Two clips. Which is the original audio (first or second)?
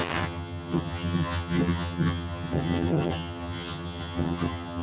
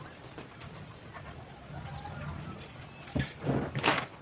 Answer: second